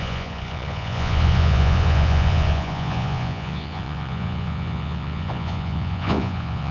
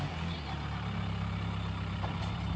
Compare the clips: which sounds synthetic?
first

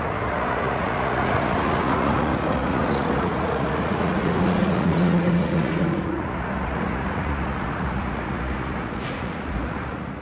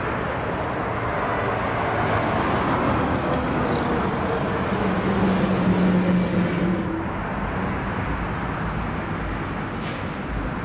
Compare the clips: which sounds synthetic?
first